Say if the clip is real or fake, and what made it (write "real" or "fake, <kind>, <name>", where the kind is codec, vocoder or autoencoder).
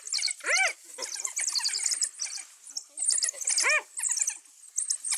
real